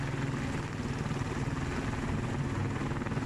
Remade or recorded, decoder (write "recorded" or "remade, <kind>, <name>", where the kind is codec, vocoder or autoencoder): recorded